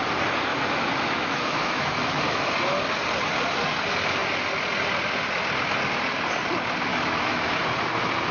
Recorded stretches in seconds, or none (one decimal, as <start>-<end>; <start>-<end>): 0.0-0.5; 2.5-6.9; 7.6-8.3